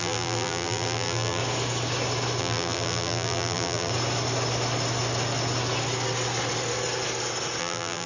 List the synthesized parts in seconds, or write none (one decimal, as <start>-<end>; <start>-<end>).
0.0-1.4; 2.4-3.9; 7.6-8.1